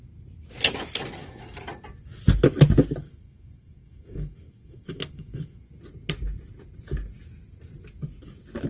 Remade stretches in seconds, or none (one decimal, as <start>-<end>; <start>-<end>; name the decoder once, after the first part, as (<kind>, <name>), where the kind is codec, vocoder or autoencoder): 1.2-1.7 (autoencoder, DAC-VAE); 3.0-5.7